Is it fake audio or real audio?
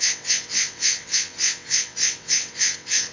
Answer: fake